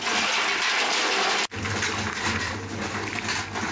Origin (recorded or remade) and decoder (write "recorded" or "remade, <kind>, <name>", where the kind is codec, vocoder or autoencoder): recorded